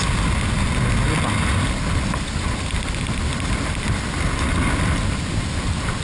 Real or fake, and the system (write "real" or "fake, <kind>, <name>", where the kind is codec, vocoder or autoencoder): real